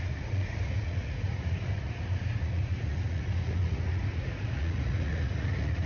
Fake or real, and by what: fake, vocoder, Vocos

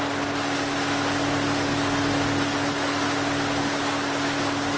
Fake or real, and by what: real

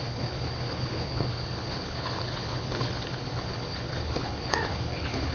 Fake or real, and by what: fake, codec, HILCodec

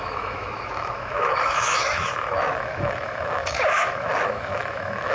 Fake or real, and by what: fake, autoencoder, DAC-VAE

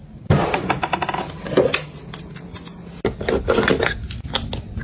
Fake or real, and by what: real